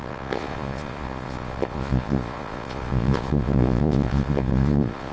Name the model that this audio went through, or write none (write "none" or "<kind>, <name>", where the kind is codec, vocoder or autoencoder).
vocoder, Vocos